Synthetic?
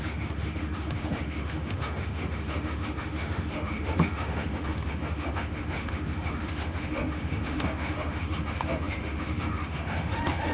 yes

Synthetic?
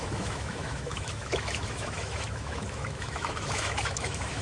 yes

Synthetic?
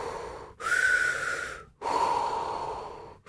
no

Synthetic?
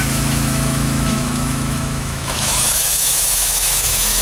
yes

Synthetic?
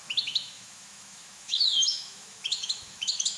yes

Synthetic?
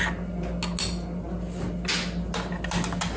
no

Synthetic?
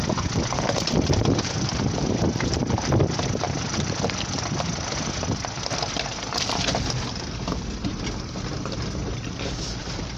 no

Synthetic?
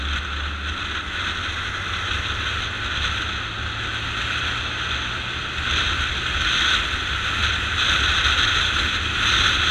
no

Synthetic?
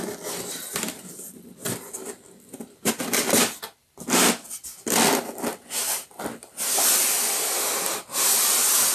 no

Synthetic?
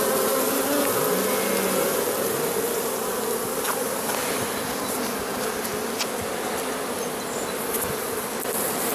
no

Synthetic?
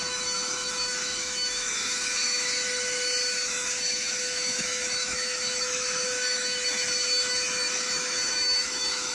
yes